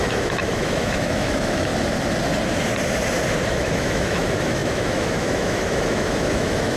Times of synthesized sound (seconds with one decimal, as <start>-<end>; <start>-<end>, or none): 0.0-1.7; 3.5-6.8